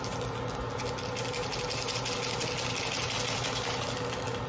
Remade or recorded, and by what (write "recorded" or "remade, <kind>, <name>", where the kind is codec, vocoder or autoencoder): recorded